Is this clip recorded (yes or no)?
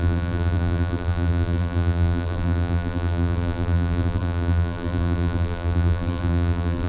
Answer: no